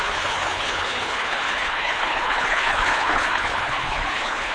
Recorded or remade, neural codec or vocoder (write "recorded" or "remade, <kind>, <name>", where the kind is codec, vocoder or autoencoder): remade, codec, HILCodec